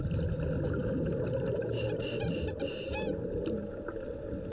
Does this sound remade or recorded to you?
recorded